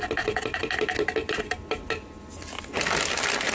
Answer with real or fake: real